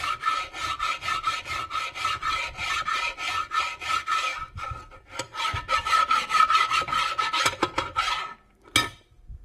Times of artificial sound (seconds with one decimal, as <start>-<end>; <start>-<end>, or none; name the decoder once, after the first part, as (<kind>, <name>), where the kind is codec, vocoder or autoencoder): 1.1-1.8 (vocoder, BigVGAN v2); 3.4-8.1